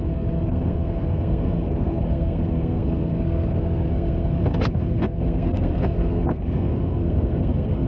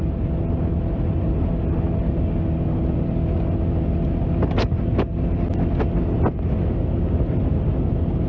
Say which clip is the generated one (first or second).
first